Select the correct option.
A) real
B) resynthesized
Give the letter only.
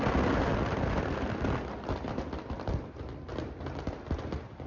A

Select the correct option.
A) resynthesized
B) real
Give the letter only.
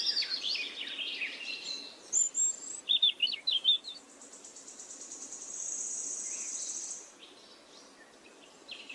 B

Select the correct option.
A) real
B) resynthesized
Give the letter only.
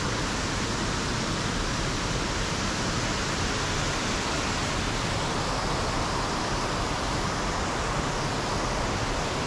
A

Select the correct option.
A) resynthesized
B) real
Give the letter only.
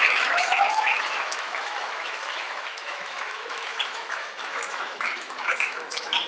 A